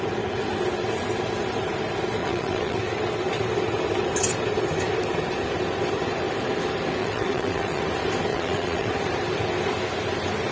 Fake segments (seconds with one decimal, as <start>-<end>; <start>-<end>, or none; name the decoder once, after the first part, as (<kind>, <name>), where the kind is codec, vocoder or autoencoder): 2.2-2.8 (vocoder, WaveNeXt); 7.0-7.8; 8.3-8.9